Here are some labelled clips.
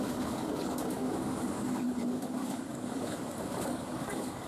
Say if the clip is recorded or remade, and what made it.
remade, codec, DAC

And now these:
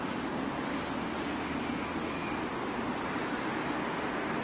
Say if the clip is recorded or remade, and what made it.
recorded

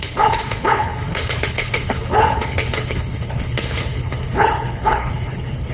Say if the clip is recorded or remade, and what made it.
remade, codec, HILCodec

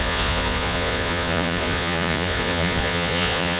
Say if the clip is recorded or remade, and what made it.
remade, vocoder, Vocos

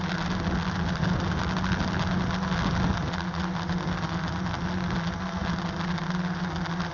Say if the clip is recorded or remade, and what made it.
recorded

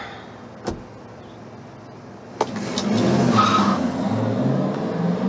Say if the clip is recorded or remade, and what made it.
recorded